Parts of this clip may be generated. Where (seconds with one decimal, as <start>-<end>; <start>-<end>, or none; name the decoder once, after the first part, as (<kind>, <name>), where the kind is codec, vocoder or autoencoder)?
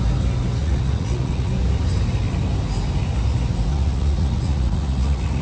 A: 0.6-1.5 (vocoder, Vocos); 3.7-5.4